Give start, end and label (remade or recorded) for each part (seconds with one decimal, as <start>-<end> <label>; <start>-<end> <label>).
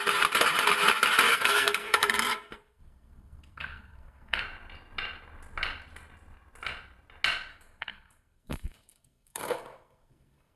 0.0-1.3 recorded; 1.3-4.4 remade; 4.4-7.5 recorded; 7.5-10.6 remade